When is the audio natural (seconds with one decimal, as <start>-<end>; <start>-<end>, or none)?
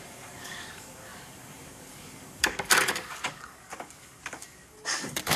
none